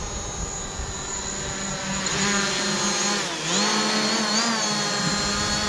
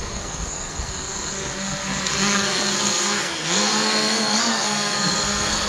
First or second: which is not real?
second